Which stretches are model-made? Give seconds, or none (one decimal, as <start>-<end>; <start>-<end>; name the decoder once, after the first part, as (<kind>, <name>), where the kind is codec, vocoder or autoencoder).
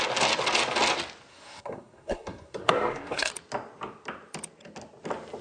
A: 1.3-3.3 (codec, SNAC)